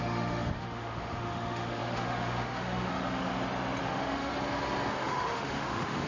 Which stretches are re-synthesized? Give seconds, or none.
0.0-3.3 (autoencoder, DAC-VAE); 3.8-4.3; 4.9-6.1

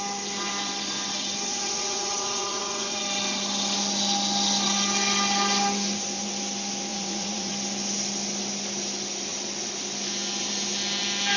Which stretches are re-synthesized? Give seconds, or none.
1.5-3.0 (vocoder, Vocos); 6.9-7.5

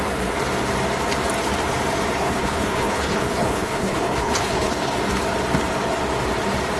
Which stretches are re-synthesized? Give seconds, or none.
2.2-5.0 (codec, HILCodec)

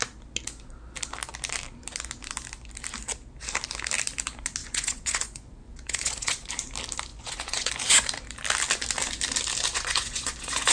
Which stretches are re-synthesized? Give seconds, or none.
4.6-6.5 (vocoder, Vocos); 7.1-7.7; 9.7-10.7